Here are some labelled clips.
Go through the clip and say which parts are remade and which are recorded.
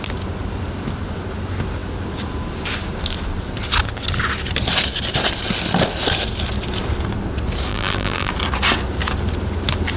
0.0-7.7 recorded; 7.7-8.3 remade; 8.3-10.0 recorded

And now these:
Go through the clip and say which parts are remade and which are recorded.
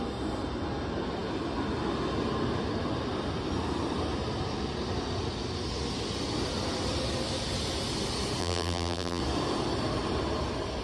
0.0-8.4 recorded; 8.4-9.2 remade; 9.2-10.8 recorded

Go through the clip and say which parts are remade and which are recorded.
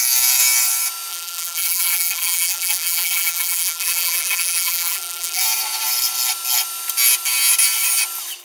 0.0-1.1 recorded; 1.1-5.4 remade; 5.4-8.4 recorded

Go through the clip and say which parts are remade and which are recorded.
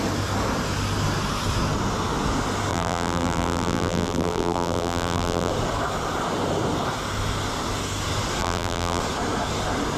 0.0-2.7 recorded; 2.7-5.5 remade; 5.5-8.4 recorded; 8.4-9.0 remade; 9.0-10.0 recorded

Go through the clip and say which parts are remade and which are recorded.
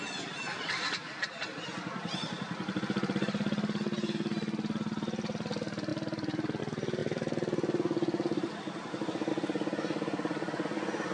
0.0-2.8 remade; 2.8-5.9 recorded; 5.9-6.6 remade; 6.6-7.0 recorded; 7.0-9.3 remade; 9.3-11.1 recorded